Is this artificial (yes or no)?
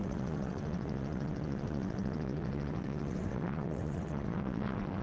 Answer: yes